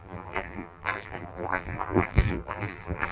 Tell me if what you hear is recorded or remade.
remade